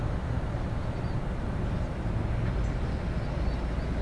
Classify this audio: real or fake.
real